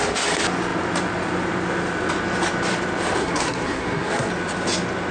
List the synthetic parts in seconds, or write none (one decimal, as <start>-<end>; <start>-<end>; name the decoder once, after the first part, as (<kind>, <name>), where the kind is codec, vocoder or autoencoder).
3.2-4.3 (codec, SNAC)